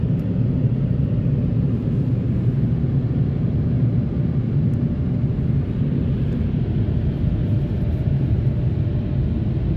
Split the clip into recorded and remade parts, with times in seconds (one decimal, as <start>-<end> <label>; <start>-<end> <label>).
0.0-9.8 recorded